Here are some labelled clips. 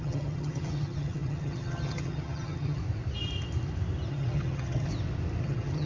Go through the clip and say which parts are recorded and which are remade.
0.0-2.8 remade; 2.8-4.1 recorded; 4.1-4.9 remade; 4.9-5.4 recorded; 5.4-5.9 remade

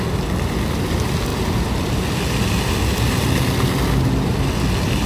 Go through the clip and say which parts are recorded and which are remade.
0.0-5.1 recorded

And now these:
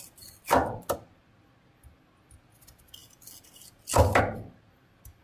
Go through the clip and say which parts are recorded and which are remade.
0.0-5.2 recorded

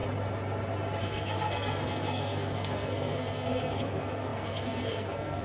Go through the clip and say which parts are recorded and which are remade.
0.0-1.0 recorded; 1.0-5.4 remade